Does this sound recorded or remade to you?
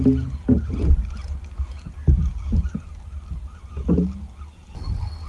recorded